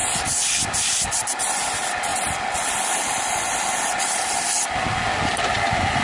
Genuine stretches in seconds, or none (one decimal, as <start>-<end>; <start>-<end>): 0.0-6.0